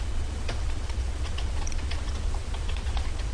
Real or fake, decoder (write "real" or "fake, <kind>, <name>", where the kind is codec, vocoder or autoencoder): fake, vocoder, Vocos